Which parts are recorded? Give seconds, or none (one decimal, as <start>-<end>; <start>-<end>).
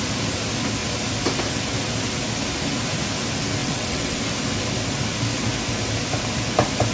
0.0-3.6; 4.2-6.9